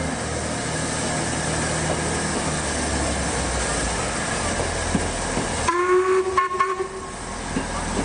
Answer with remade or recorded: recorded